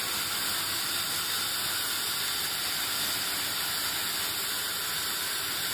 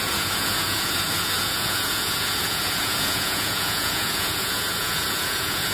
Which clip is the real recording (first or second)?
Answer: first